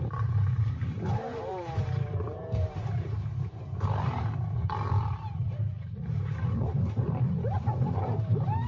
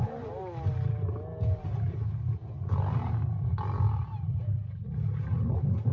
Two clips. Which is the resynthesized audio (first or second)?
first